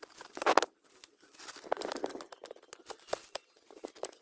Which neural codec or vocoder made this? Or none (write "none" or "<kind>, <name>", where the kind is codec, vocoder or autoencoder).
none